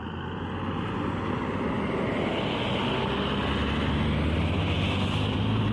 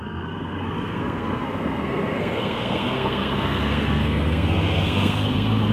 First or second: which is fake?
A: second